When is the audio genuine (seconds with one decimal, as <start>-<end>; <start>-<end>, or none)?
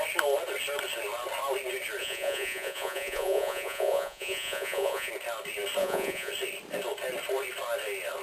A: 0.0-2.0; 5.1-5.8; 6.3-8.2